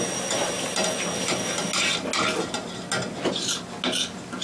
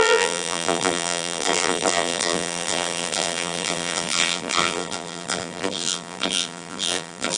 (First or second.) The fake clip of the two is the second